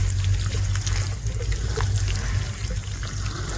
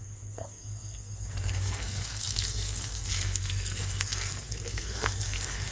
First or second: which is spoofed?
second